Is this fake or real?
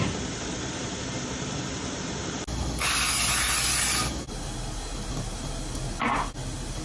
real